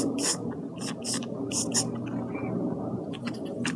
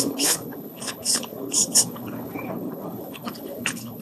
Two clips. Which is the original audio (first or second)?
first